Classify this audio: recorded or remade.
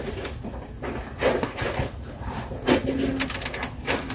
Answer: recorded